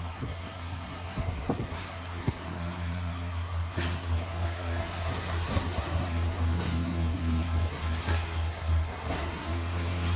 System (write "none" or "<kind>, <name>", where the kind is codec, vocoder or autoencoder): codec, SNAC